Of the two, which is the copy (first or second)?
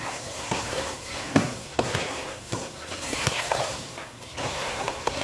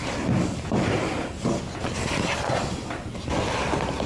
first